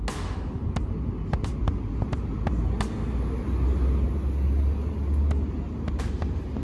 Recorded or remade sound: recorded